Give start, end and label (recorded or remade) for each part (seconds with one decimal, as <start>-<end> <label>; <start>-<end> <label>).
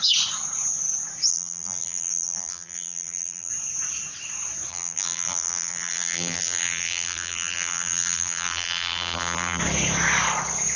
0.0-1.3 recorded; 1.3-3.5 remade; 3.5-4.7 recorded; 4.7-9.6 remade; 9.6-10.8 recorded